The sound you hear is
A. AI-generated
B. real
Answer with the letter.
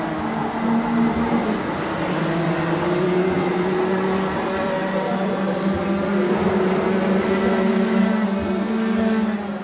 B